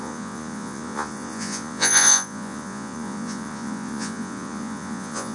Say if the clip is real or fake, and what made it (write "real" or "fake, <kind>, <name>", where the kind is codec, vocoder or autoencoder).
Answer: fake, vocoder, Vocos